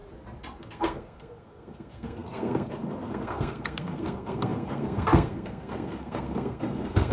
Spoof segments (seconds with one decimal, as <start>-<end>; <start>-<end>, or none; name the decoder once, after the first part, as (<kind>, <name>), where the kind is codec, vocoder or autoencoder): 0.6-7.1 (codec, SNAC)